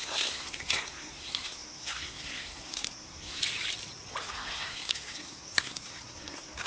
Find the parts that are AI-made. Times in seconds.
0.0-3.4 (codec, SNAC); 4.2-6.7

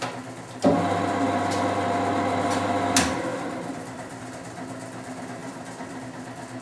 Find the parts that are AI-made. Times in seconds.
3.3-4.2 (vocoder, BigVGAN v2); 5.4-6.0

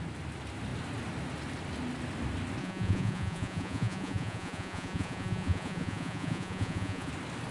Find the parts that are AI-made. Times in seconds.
2.6-7.1 (vocoder, Vocos)

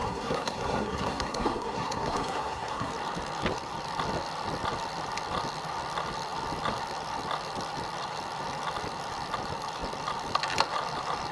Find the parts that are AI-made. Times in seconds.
0.0-2.9 (codec, SNAC)

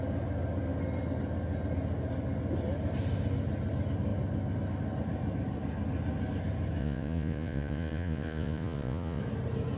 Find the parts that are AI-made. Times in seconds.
6.8-9.2 (vocoder, Vocos)

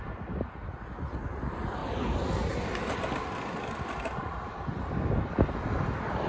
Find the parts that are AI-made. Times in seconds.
none

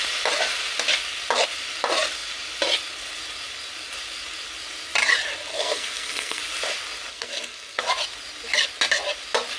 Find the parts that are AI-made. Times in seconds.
5.5-6.4 (codec, SNAC); 7.1-7.8